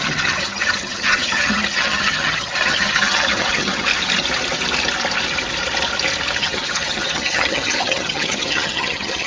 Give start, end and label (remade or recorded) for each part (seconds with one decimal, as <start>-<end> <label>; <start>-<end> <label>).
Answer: 0.0-3.9 remade; 3.9-6.4 recorded; 6.4-9.3 remade